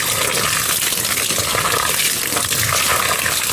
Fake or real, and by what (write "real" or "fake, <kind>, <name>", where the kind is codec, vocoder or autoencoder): real